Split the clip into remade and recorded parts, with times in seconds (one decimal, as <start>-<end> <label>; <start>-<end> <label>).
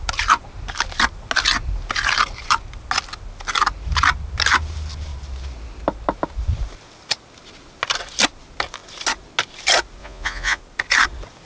0.0-10.0 recorded; 10.0-10.6 remade; 10.6-11.5 recorded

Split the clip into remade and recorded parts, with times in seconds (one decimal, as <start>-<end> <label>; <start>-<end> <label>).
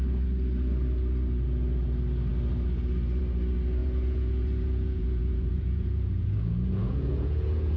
0.0-3.8 recorded; 3.8-7.8 remade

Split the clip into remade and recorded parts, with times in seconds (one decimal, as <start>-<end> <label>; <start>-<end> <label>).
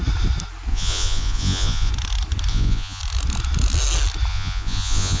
0.0-0.7 recorded; 0.7-1.9 remade; 1.9-2.5 recorded; 2.5-3.0 remade; 3.0-4.3 recorded; 4.3-5.2 remade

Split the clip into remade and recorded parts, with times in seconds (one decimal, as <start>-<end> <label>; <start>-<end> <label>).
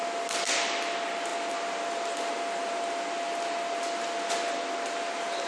0.0-5.5 recorded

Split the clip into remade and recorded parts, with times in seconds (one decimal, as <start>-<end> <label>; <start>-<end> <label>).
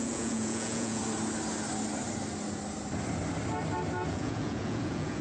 0.0-1.0 remade; 1.0-4.1 recorded; 4.1-5.2 remade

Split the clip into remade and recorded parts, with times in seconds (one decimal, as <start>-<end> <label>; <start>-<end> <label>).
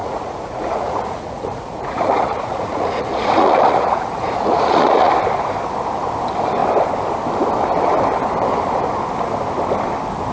0.0-5.1 remade; 5.1-10.3 recorded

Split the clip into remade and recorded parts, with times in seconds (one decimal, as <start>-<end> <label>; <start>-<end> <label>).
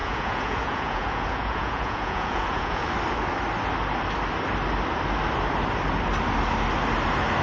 0.0-2.9 remade; 2.9-7.4 recorded